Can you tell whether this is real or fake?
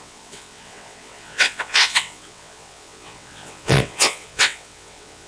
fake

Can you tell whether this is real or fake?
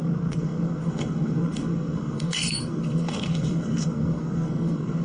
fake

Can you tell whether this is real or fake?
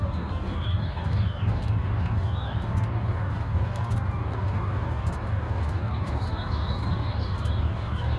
fake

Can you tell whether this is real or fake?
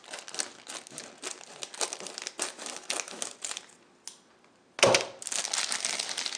real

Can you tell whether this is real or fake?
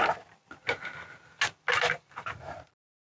real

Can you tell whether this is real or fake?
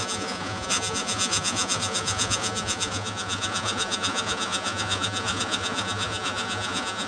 fake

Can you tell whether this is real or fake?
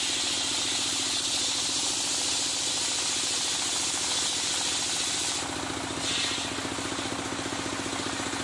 real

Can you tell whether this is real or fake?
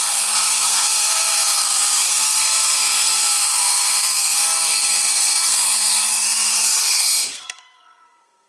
fake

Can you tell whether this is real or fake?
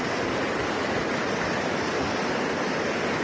real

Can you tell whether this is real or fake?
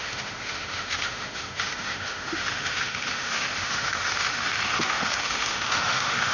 fake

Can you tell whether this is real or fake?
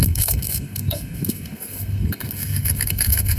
fake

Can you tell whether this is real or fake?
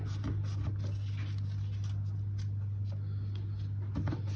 real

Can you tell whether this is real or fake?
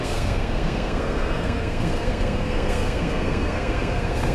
fake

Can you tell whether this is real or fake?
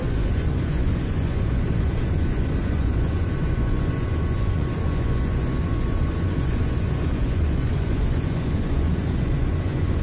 fake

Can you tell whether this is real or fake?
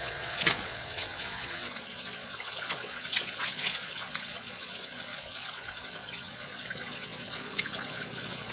fake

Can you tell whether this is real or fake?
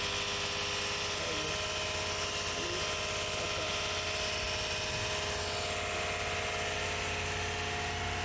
real